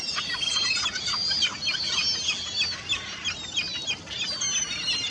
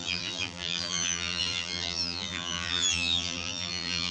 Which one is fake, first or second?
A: second